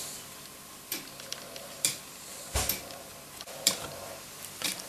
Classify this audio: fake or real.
fake